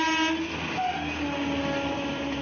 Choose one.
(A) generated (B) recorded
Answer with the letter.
B